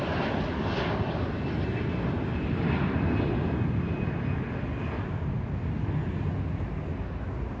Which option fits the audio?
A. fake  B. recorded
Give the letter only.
B